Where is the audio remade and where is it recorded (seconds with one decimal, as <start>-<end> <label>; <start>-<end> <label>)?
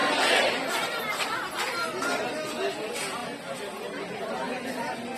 0.0-5.2 recorded